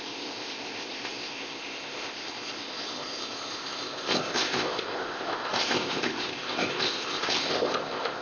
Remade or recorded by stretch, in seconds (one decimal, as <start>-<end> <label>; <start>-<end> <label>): 0.0-8.2 remade